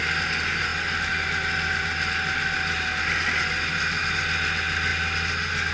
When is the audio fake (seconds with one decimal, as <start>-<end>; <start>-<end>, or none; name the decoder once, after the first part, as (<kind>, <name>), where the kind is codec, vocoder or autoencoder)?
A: none